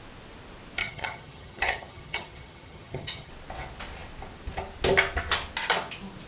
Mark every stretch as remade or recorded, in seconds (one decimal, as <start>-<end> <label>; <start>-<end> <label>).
0.0-0.8 recorded; 0.8-3.3 remade; 3.3-6.3 recorded